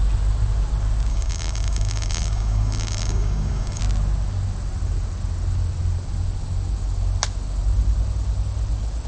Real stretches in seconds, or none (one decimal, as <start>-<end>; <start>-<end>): 0.0-1.1; 3.8-9.1